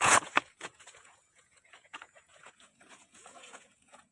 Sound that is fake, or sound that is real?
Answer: fake